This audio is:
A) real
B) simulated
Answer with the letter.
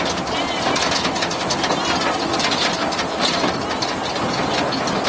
A